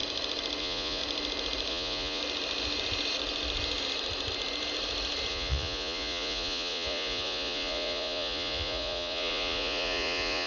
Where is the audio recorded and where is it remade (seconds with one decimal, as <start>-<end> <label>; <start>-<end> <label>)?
0.0-0.6 recorded; 0.6-1.0 remade; 1.0-1.7 recorded; 1.7-2.2 remade; 2.2-5.3 recorded; 5.3-10.5 remade